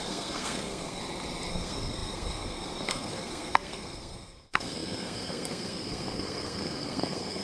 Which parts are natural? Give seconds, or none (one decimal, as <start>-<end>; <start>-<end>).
1.0-1.5